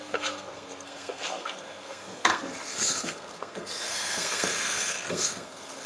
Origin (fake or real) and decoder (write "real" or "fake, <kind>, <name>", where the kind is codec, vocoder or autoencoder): fake, codec, SNAC